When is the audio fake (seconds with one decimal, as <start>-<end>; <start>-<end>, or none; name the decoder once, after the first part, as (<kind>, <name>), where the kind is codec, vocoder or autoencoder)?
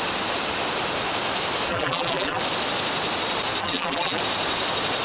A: 1.7-2.4 (vocoder, BigVGAN v2); 3.6-4.2